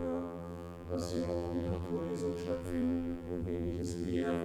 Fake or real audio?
fake